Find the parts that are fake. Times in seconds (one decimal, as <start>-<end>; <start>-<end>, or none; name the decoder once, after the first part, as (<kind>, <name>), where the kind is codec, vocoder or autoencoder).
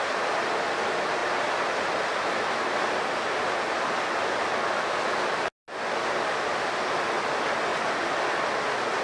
none